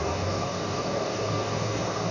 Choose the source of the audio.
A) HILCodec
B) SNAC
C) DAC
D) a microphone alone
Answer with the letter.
C